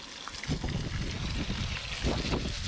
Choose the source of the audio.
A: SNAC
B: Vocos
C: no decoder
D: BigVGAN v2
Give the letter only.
C